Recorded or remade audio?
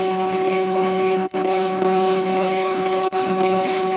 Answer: remade